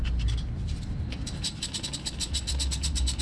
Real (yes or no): yes